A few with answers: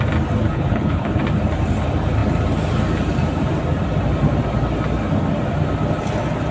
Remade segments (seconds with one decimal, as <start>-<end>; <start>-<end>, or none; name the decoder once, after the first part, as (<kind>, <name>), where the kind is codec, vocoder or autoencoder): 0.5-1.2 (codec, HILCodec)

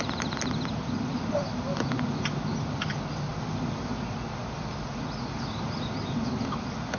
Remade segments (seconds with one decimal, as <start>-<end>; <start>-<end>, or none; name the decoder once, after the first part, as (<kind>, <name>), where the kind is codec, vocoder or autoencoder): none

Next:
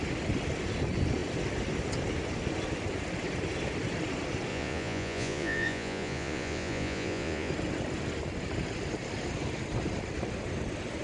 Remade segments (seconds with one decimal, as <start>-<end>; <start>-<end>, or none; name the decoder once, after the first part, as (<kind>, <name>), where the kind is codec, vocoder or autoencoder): 4.5-7.5 (vocoder, Vocos)

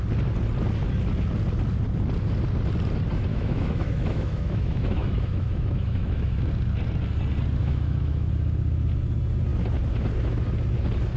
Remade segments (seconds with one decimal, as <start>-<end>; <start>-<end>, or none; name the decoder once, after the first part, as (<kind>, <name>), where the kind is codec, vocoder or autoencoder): 3.3-6.5 (autoencoder, DAC-VAE); 7.6-8.3